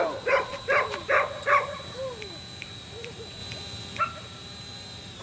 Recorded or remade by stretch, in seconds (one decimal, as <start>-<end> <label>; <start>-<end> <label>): 0.0-3.4 remade; 3.4-4.0 recorded; 4.0-5.2 remade